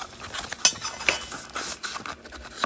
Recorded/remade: recorded